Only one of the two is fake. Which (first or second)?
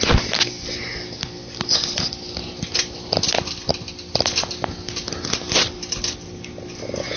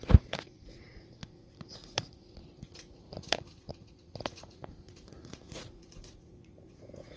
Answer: second